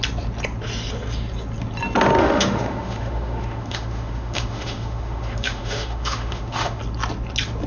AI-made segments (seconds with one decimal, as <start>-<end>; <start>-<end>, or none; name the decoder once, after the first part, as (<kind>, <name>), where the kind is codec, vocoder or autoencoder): 2.2-6.8 (autoencoder, DAC-VAE)